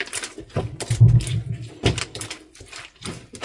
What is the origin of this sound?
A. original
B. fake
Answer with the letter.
A